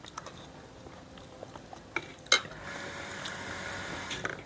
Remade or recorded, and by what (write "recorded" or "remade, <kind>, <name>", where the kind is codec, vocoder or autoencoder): recorded